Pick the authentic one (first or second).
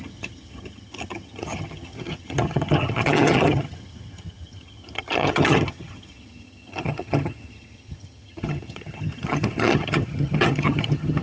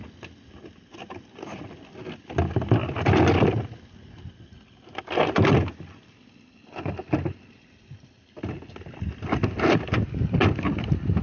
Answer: second